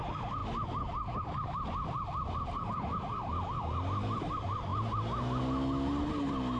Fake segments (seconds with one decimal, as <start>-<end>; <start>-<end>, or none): none